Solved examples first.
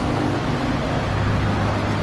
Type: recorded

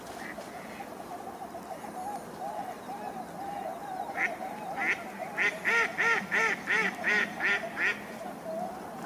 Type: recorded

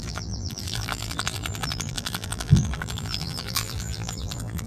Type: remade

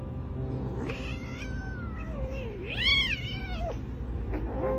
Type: recorded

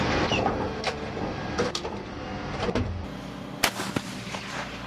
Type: remade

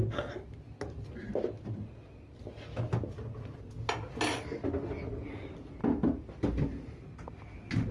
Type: recorded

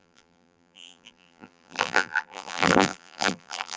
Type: remade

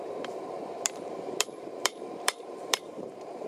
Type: remade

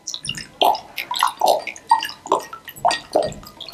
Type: recorded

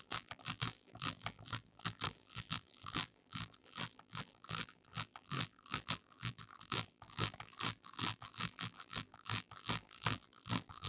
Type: remade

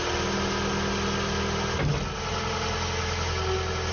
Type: recorded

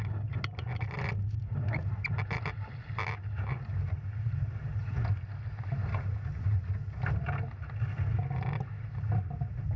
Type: recorded